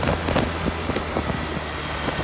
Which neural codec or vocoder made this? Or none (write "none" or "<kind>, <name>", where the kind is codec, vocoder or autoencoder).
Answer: none